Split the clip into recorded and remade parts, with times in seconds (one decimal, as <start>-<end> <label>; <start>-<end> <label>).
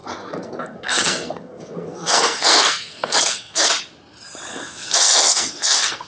0.0-3.7 remade; 3.7-4.5 recorded; 4.5-6.1 remade